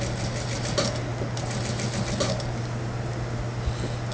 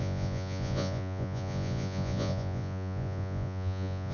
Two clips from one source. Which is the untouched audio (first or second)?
first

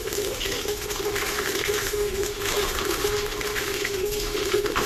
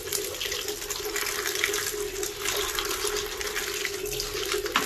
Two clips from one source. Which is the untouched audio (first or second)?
second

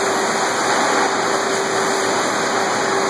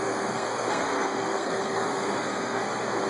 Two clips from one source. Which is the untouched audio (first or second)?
first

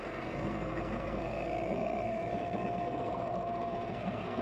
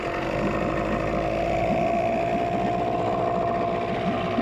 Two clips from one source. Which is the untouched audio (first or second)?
second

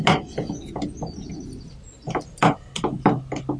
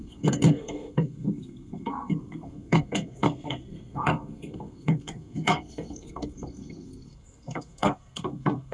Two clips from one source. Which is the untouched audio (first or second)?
first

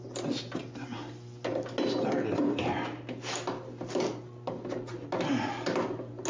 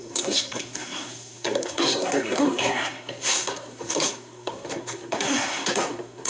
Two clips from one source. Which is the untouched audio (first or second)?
first